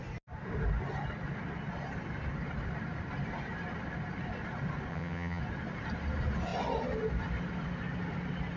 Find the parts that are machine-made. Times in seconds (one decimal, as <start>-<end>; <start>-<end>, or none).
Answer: 4.9-5.4